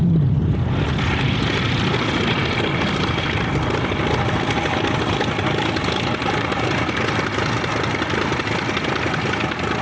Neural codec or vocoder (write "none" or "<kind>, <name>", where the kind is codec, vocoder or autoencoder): none